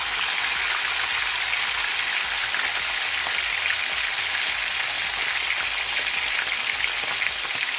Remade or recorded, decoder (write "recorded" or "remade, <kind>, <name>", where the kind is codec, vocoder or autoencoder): recorded